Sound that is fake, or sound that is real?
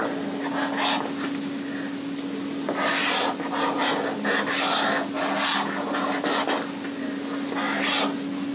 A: real